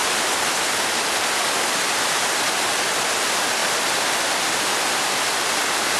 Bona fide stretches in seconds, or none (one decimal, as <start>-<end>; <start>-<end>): 0.0-6.0

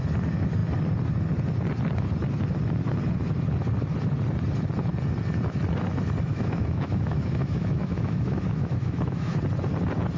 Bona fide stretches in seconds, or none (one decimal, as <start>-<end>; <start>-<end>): 0.0-6.3; 9.4-10.2

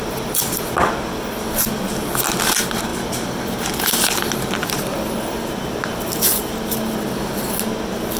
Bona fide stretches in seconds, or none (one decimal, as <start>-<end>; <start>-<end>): 0.0-2.9; 6.5-8.2

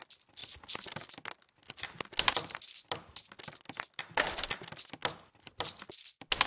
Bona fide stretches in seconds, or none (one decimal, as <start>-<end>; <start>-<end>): 0.0-6.5

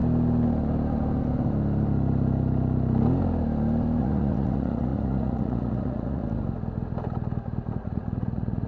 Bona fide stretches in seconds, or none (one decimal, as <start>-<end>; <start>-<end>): 0.0-4.0; 6.2-7.7